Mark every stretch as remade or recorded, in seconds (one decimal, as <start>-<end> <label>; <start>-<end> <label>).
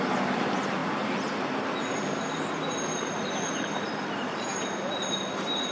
0.0-5.7 recorded